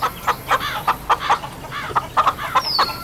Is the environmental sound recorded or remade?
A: recorded